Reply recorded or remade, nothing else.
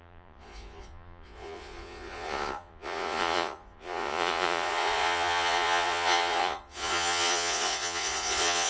remade